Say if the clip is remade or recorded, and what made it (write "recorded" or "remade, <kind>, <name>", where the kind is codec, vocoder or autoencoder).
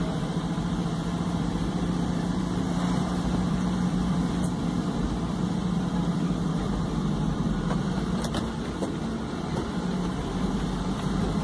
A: remade, vocoder, BigVGAN v2